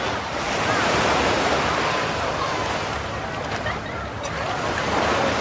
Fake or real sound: real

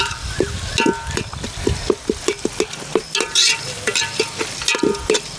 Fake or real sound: real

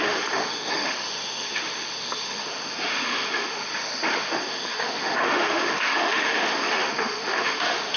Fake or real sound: fake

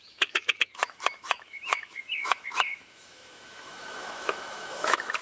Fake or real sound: fake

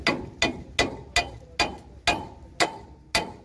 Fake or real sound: real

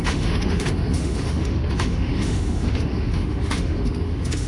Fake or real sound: fake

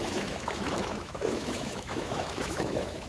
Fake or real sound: fake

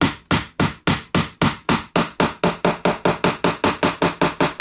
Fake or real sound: real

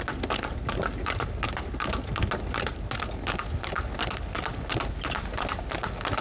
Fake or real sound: real